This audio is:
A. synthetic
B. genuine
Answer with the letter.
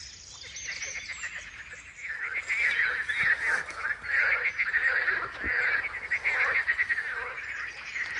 B